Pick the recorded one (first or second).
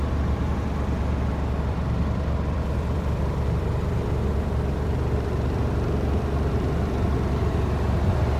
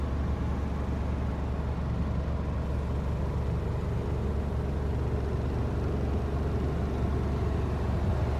second